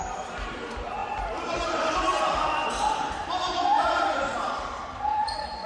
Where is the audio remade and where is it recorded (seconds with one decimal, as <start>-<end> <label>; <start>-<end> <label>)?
0.0-5.7 remade